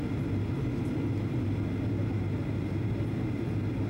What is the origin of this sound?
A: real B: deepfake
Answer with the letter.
A